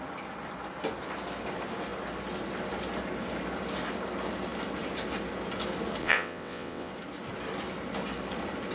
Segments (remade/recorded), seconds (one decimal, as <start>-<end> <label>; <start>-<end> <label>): 0.0-6.0 recorded; 6.0-6.9 remade; 6.9-8.7 recorded